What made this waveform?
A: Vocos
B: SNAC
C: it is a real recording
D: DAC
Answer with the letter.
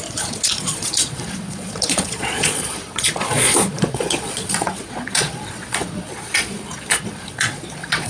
A